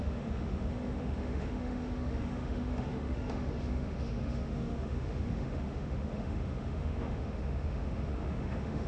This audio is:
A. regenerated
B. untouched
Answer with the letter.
A